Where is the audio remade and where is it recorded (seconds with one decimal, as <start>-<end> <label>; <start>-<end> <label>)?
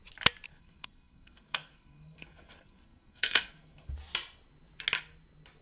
0.0-0.5 recorded; 0.5-3.9 remade; 3.9-5.6 recorded